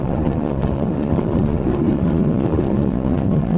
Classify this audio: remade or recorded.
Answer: remade